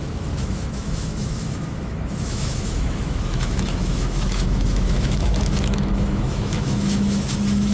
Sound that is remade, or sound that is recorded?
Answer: remade